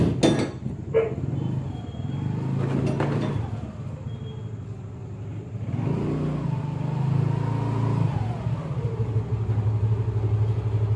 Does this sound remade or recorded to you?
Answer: recorded